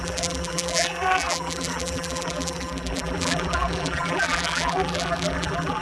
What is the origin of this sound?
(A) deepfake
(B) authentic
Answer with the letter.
A